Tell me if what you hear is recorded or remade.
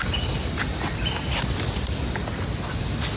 recorded